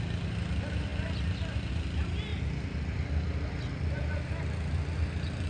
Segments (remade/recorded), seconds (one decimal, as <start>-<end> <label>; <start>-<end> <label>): 0.0-5.5 recorded